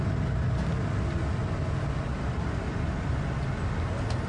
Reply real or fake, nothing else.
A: real